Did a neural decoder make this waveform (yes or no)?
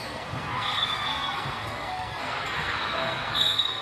yes